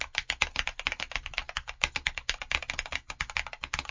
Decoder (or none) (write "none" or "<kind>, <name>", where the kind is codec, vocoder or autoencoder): none